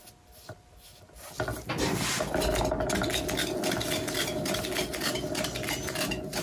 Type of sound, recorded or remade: recorded